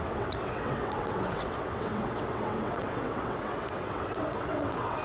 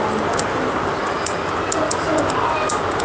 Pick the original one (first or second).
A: second